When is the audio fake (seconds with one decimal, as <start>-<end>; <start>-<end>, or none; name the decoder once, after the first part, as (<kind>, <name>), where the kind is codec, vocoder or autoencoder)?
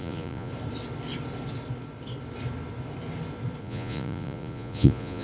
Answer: 0.0-0.5 (vocoder, Vocos); 3.6-5.2